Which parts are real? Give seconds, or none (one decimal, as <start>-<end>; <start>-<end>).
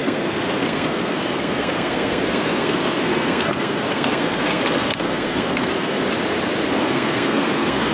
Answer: 6.0-6.7